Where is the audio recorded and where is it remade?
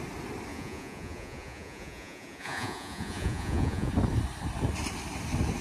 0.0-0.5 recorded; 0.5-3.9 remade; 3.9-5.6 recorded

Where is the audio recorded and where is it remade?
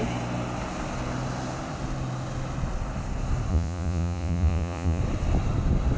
0.0-3.5 recorded; 3.5-5.0 remade; 5.0-6.0 recorded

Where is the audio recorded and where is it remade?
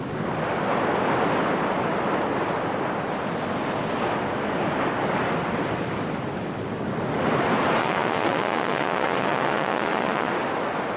0.0-7.8 recorded; 7.8-10.3 remade; 10.3-11.0 recorded